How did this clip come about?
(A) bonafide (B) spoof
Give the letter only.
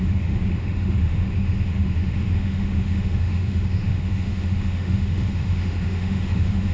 B